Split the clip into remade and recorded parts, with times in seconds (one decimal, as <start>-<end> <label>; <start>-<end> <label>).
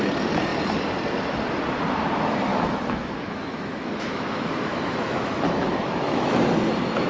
0.0-2.5 recorded; 2.5-6.4 remade; 6.4-7.1 recorded